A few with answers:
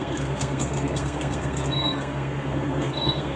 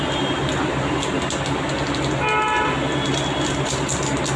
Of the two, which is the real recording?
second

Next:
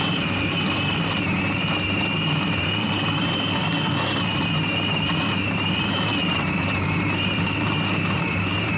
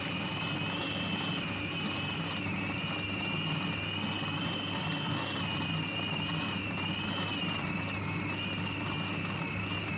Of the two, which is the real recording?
second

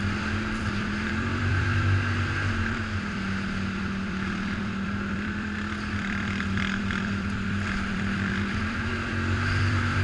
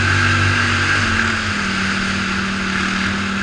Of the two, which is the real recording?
second